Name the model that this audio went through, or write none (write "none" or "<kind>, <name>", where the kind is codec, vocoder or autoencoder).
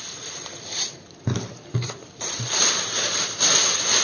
vocoder, BigVGAN v2